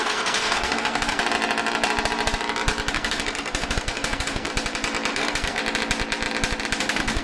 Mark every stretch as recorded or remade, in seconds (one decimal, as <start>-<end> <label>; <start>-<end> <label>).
0.0-1.2 remade; 1.2-2.9 recorded; 2.9-4.5 remade; 4.5-5.1 recorded; 5.1-5.6 remade; 5.6-6.8 recorded; 6.8-7.2 remade